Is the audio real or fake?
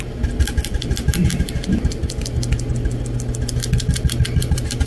real